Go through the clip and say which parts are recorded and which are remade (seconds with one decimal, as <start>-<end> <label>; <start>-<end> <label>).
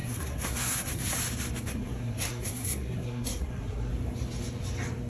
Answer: 0.0-1.1 remade; 1.1-1.7 recorded; 1.7-3.9 remade; 3.9-5.1 recorded